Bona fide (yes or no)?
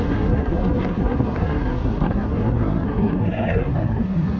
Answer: no